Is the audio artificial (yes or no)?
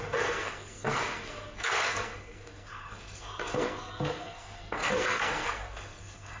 yes